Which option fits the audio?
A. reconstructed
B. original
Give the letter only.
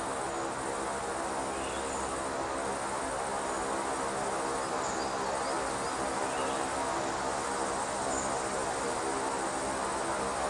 B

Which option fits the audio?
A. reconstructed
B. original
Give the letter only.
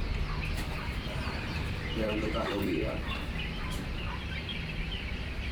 A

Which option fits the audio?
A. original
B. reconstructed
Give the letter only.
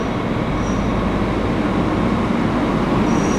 A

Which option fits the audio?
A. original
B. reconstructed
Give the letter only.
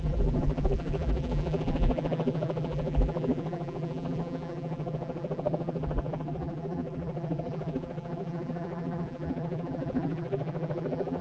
B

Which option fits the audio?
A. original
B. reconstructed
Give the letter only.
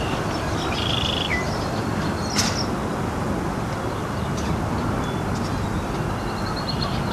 A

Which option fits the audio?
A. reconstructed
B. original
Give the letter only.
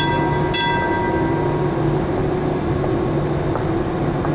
B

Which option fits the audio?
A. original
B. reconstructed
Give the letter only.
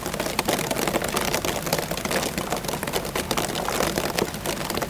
A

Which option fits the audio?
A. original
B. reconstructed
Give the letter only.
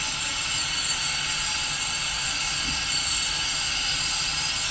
A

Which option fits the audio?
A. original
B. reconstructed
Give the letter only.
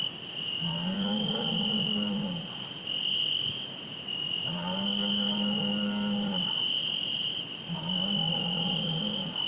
B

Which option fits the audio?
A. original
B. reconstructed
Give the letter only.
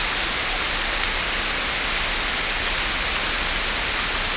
A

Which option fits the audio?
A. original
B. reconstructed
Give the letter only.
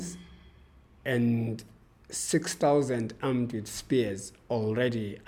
A